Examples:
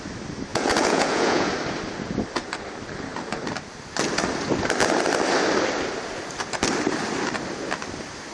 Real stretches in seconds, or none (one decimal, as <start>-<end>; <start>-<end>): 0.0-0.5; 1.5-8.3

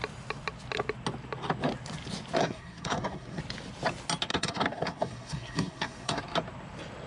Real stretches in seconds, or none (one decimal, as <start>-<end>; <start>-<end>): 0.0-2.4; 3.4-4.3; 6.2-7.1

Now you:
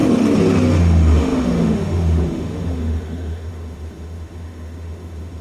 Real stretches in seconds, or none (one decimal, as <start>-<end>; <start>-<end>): 0.0-0.8